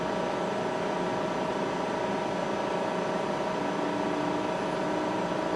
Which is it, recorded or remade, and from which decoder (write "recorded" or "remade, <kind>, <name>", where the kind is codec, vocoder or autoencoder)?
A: recorded